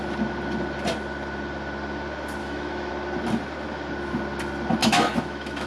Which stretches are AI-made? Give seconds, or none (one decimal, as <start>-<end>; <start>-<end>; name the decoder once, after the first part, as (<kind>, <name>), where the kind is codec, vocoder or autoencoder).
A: 2.4-2.9 (autoencoder, DAC-VAE); 4.8-5.7